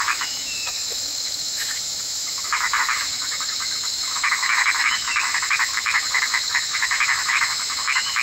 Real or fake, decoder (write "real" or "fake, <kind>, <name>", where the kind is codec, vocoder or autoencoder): fake, autoencoder, DAC-VAE